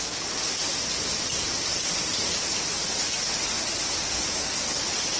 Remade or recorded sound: recorded